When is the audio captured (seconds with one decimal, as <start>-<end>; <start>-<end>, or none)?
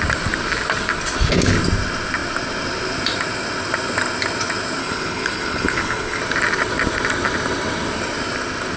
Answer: 0.0-4.8; 6.2-8.8